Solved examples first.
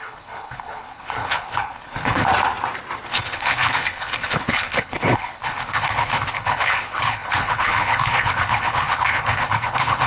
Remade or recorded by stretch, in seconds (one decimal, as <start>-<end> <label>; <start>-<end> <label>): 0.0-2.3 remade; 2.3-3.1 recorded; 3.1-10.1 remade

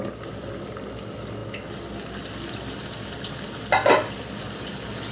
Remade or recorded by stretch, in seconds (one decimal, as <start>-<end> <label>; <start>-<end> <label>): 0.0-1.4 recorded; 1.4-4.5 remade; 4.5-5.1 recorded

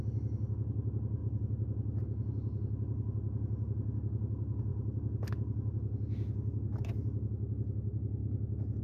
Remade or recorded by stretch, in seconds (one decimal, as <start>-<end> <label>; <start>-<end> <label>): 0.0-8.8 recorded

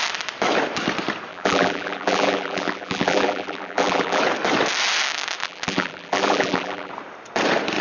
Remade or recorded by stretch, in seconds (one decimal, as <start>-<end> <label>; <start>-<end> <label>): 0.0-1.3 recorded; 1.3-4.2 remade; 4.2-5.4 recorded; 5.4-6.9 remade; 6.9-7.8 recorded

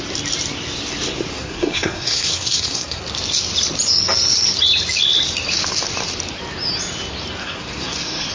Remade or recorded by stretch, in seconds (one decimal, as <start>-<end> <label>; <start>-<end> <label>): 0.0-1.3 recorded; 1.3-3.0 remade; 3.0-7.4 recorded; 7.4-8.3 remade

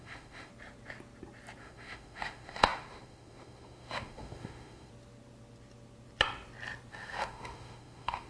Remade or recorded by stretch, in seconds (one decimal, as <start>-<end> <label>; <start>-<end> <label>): 0.0-0.5 remade; 0.5-1.6 recorded; 1.6-4.9 remade; 4.9-6.9 recorded; 6.9-8.3 remade